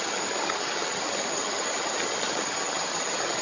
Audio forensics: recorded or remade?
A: remade